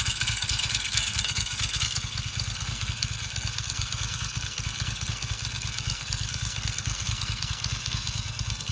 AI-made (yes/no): yes